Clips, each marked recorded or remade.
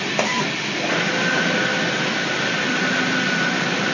recorded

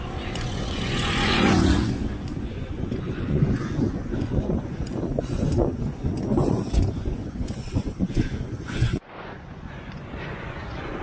remade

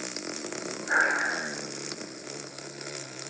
recorded